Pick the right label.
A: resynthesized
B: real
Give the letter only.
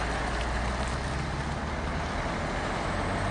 B